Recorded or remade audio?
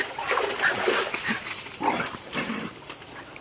recorded